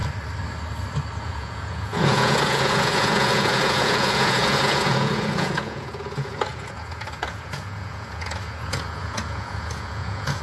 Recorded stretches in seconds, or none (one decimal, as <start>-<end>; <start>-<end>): 0.0-1.2